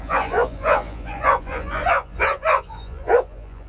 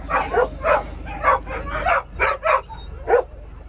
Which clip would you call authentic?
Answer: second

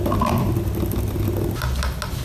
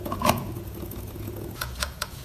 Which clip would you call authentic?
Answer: first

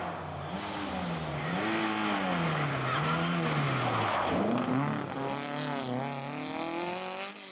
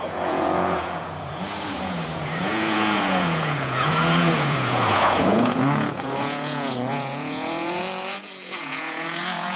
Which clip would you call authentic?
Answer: first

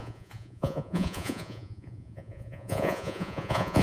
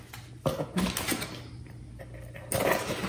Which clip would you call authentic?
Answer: second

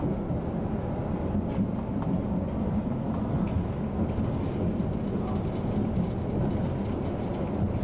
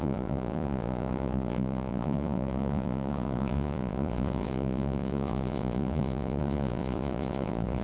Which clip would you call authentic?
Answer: first